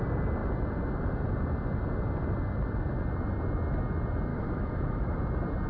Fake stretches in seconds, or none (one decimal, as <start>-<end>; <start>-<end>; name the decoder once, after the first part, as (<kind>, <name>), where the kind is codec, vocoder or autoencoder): 4.3-5.2 (autoencoder, DAC-VAE)